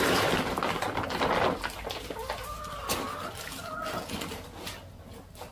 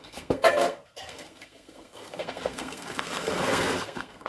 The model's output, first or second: second